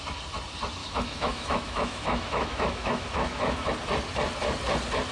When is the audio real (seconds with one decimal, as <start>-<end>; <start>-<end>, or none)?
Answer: 0.0-0.8; 3.7-5.1